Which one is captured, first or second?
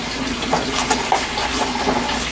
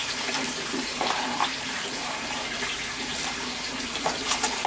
first